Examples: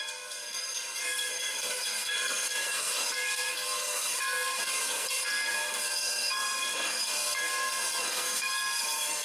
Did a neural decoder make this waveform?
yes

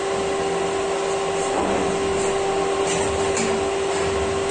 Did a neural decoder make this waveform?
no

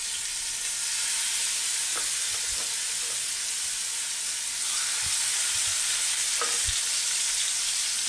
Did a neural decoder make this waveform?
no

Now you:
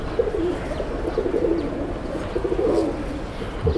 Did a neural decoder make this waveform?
no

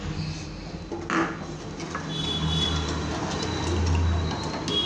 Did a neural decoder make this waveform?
no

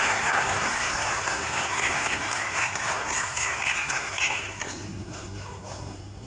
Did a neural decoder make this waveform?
yes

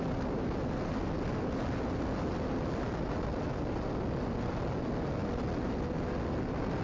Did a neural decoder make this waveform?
no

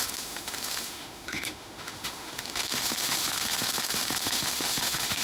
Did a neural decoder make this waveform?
yes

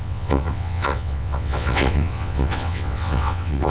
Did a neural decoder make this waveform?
yes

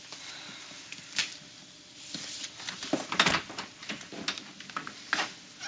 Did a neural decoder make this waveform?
no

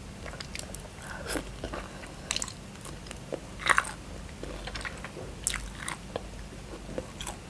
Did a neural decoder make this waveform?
no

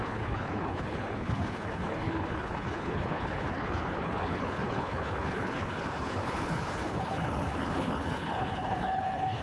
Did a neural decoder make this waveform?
yes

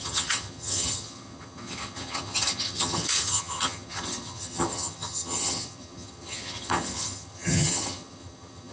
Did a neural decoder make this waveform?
yes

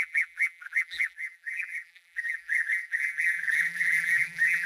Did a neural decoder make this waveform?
yes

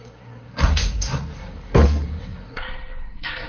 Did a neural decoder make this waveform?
yes